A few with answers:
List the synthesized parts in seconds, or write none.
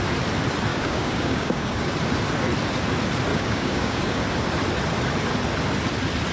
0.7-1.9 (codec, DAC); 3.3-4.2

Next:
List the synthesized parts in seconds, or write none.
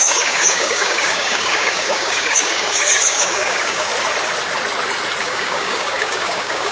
0.0-3.9 (codec, DAC); 5.2-6.7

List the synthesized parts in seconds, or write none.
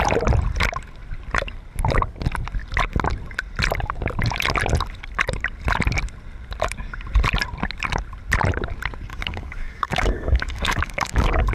9.1-11.5 (codec, DAC)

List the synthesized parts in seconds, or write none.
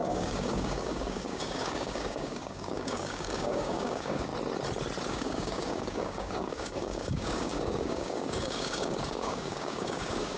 0.0-4.3 (codec, DAC); 5.1-10.4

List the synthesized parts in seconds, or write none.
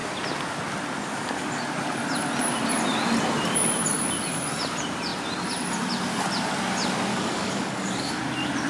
7.1-8.2 (codec, DAC)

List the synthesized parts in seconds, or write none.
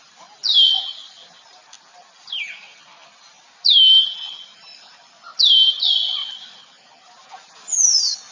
none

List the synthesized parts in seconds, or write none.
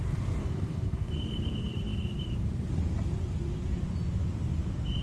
0.4-1.1 (codec, DAC)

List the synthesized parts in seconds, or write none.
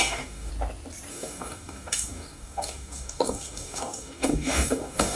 0.0-0.5 (codec, DAC); 1.1-5.2